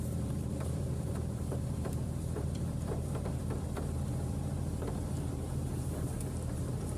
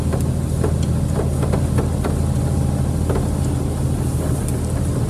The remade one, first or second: first